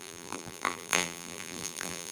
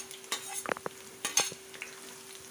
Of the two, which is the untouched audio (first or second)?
second